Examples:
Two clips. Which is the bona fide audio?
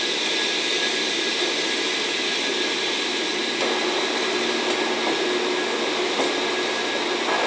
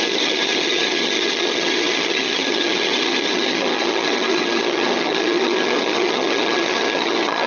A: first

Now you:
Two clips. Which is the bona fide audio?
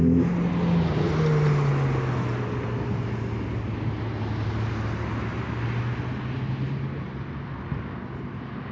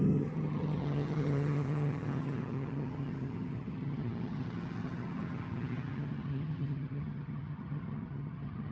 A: first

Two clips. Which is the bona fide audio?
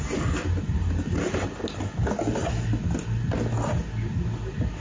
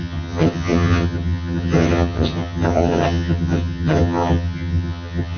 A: first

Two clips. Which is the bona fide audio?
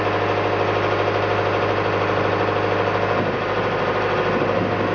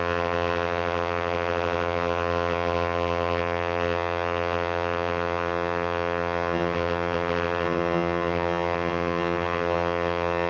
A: first